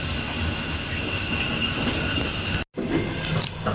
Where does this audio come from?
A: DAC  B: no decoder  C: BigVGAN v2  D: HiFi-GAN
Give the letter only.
B